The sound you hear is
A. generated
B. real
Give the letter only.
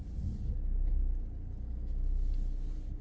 B